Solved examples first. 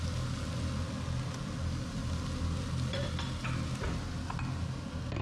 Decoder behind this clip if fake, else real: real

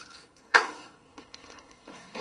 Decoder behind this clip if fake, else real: fake, codec, SNAC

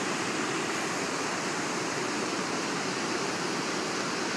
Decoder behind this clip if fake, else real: real